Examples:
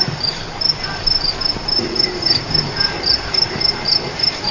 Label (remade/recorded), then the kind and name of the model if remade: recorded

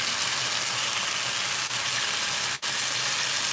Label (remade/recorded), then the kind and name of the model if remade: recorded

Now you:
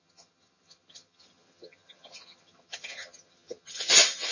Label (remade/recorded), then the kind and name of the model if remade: remade, vocoder, HiFi-GAN